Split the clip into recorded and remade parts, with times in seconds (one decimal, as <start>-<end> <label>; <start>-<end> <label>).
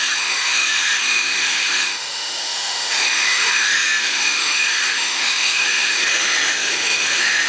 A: 0.0-7.5 remade